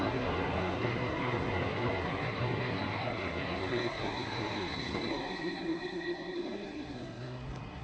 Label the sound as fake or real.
fake